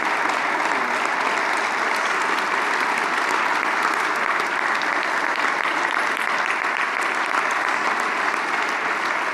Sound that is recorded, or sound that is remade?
recorded